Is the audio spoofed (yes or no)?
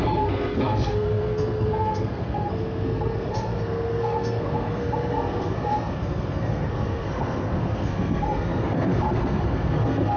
yes